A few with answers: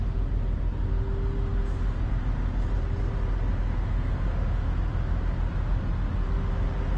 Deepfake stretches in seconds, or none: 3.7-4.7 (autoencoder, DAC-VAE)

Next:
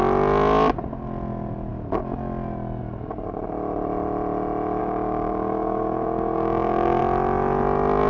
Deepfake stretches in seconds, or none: 4.8-7.0 (codec, DAC)

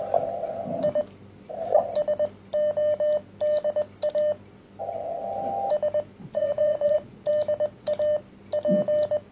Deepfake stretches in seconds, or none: 6.2-7.3 (vocoder, Vocos)

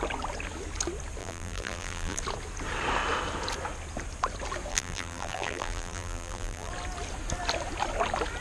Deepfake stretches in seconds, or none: 1.2-2.2 (vocoder, BigVGAN v2); 4.7-6.7

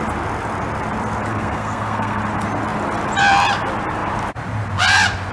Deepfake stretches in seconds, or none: 1.3-2.2 (codec, SNAC)

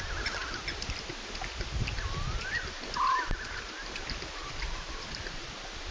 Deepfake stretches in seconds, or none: 4.4-5.5 (vocoder, BigVGAN v2)